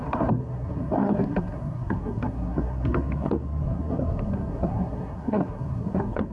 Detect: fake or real fake